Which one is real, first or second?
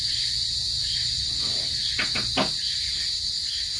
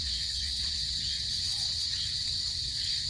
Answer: first